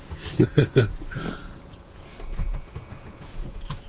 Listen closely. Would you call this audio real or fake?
fake